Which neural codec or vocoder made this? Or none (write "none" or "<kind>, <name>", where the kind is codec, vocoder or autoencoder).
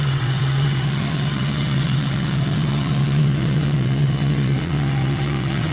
vocoder, WaveNeXt